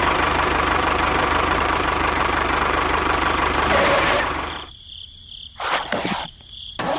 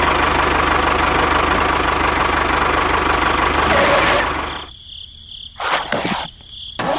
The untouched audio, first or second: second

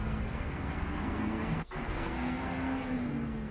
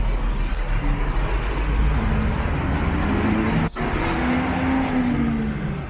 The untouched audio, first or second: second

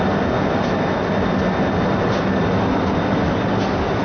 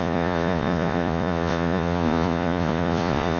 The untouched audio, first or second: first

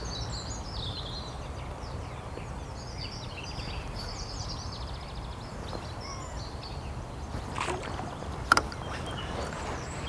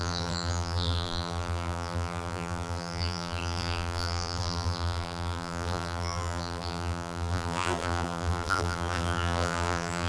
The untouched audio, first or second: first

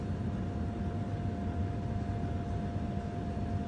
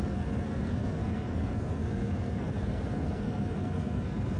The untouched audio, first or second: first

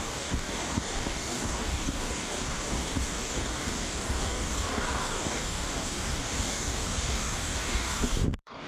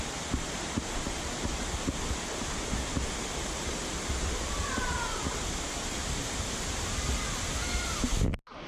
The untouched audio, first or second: second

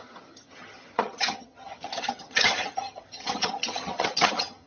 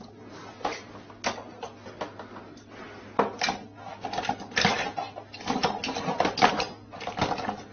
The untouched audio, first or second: second